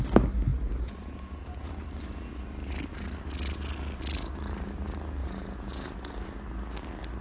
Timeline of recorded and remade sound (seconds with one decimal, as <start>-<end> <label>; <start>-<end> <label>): 0.0-0.5 recorded; 0.5-1.7 remade; 1.7-5.2 recorded; 5.2-6.1 remade; 6.1-7.2 recorded